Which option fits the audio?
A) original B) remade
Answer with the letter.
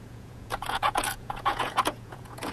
B